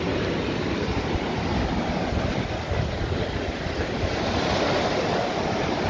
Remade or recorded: recorded